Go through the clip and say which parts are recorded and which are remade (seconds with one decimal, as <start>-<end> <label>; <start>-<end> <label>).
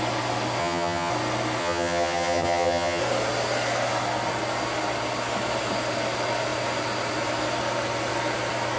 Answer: 0.0-0.6 recorded; 0.6-1.1 remade; 1.1-1.6 recorded; 1.6-3.0 remade; 3.0-8.8 recorded